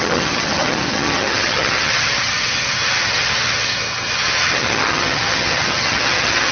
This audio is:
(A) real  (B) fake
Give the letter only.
B